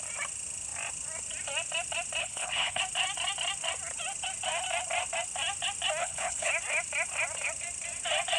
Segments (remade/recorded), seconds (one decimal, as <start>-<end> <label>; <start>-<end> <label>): 0.0-2.2 recorded; 2.2-2.8 remade; 2.8-6.0 recorded; 6.0-6.5 remade; 6.5-8.4 recorded